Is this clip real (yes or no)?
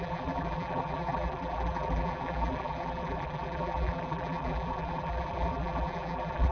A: no